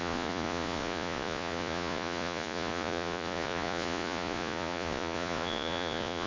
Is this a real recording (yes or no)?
no